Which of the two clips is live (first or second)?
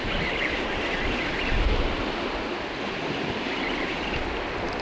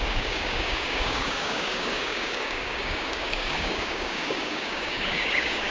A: first